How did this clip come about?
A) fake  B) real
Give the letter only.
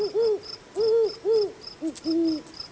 B